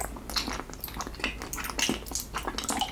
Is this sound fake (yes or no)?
no